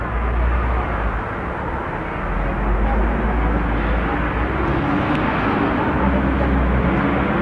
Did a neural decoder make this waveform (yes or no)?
no